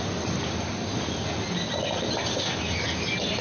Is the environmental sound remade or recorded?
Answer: recorded